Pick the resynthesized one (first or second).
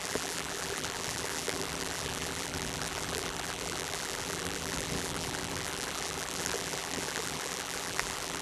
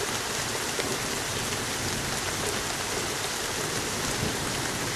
first